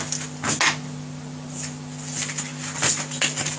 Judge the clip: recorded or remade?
recorded